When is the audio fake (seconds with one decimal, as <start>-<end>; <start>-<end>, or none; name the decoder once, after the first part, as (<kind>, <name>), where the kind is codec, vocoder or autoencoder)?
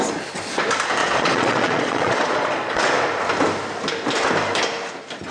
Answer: 1.0-2.8 (vocoder, Vocos)